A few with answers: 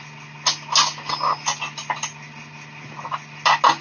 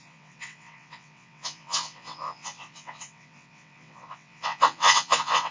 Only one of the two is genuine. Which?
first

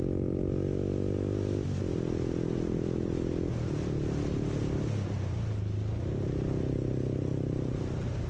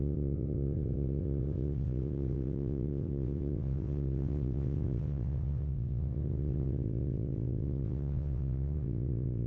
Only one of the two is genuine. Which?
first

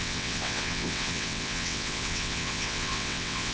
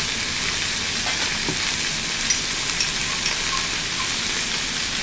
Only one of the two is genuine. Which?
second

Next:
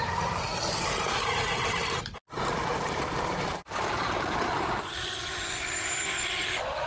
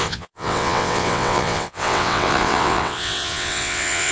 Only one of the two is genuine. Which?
first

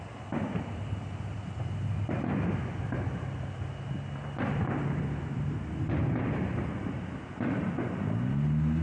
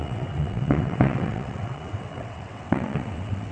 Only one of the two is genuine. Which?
first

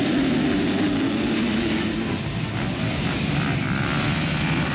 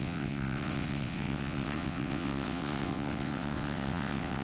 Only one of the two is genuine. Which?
first